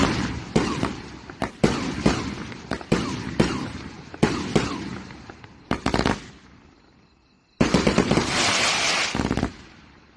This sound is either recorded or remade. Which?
remade